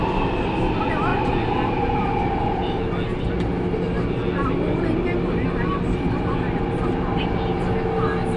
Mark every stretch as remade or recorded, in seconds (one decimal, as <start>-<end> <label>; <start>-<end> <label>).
0.0-1.1 recorded; 1.1-2.5 remade; 2.5-8.4 recorded